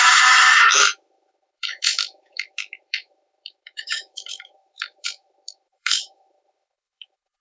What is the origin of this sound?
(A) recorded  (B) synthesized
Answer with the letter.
B